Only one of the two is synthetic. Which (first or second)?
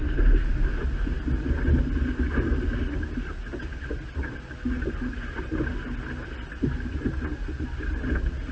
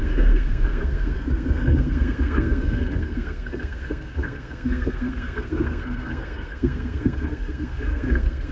second